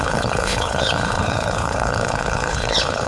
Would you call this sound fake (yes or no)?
yes